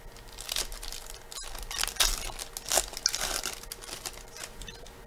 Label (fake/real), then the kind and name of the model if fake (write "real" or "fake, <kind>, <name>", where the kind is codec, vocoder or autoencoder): real